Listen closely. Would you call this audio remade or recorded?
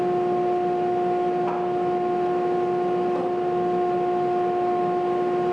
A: recorded